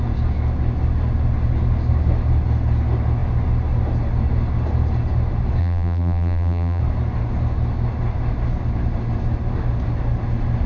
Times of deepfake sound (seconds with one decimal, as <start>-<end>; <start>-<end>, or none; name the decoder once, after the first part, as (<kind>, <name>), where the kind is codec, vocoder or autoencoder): 5.6-6.8 (vocoder, BigVGAN v2)